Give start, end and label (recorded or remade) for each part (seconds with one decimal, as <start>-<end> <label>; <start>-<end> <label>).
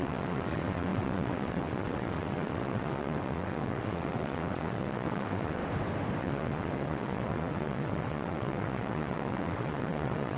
0.0-5.6 remade; 5.6-6.2 recorded; 6.2-10.4 remade